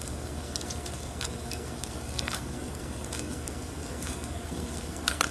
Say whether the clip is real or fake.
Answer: fake